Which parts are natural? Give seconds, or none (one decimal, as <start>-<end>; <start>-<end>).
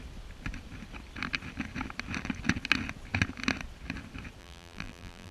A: 0.0-4.4